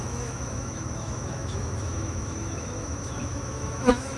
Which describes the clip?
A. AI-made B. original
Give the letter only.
A